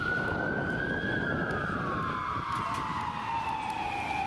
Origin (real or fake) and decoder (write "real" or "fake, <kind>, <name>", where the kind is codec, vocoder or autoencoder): real